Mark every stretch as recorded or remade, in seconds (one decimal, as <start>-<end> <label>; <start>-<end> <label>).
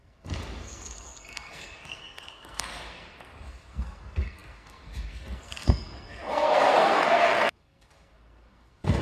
0.0-9.0 remade